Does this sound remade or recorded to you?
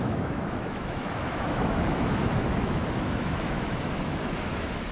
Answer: remade